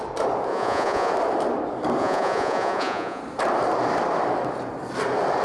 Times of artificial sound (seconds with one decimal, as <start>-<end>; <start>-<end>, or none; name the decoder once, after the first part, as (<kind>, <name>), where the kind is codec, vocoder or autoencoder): 0.5-1.1 (vocoder, Vocos); 2.0-3.2